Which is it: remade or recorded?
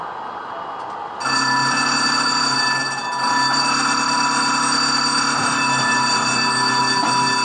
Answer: recorded